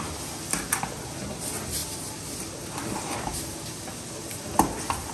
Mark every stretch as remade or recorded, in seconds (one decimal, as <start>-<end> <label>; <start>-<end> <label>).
0.0-5.1 recorded